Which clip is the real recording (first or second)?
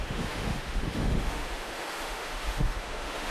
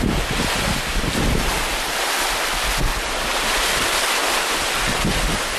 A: second